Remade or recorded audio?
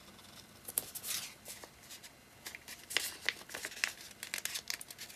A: recorded